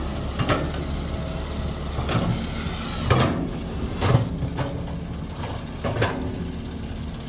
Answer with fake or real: real